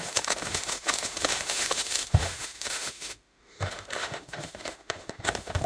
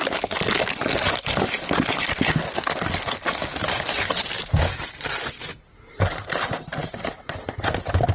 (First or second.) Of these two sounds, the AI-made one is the first